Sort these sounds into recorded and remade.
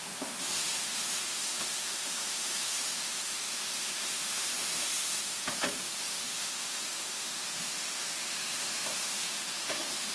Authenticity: remade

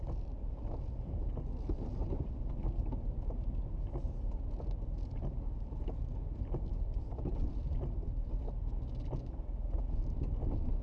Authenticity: recorded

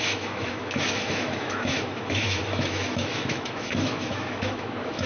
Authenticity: remade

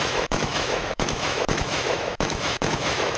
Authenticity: remade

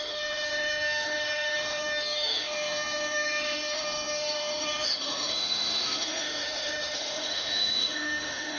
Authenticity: remade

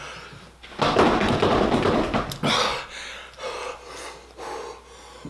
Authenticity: recorded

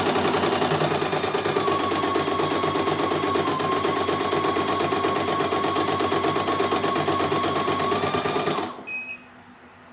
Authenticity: recorded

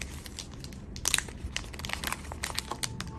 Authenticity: recorded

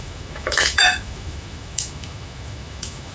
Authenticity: remade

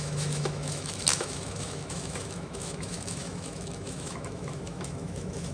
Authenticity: remade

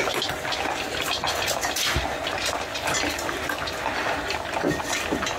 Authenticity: recorded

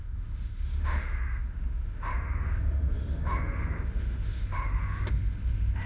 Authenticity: remade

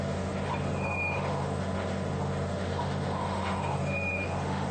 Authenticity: remade